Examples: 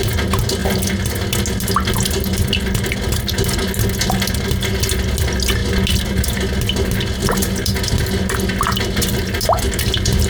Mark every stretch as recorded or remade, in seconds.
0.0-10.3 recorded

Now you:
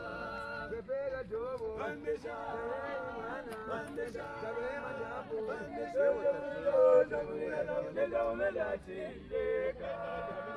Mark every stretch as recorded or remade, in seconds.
0.0-5.7 remade; 5.7-7.5 recorded; 7.5-10.6 remade

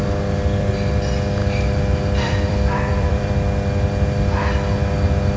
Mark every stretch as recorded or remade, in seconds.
0.0-1.4 recorded; 1.4-3.3 remade; 3.3-5.4 recorded